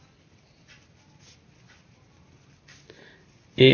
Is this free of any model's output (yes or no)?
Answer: yes